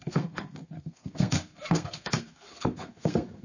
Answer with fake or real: fake